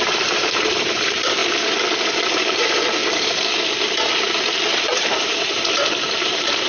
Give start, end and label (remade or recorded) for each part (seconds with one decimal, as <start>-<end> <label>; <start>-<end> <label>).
0.0-1.4 remade; 1.4-2.6 recorded; 2.6-3.0 remade; 3.0-4.7 recorded; 4.7-6.7 remade